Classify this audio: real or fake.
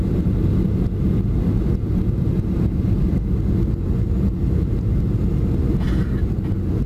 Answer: real